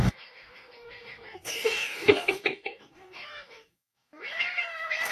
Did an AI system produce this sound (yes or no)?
yes